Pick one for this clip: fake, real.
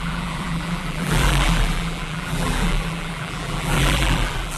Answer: fake